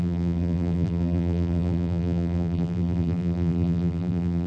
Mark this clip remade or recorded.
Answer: remade